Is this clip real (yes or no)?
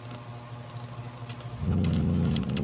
yes